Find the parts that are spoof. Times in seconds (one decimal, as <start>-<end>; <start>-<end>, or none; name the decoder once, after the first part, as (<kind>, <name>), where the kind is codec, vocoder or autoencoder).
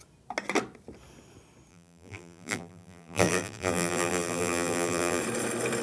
1.7-5.2 (vocoder, BigVGAN v2)